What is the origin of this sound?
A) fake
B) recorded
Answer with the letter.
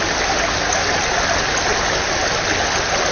B